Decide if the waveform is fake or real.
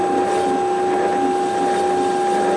real